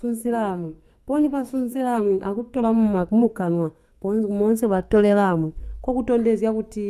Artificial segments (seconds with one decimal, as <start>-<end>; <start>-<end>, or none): 0.0-5.7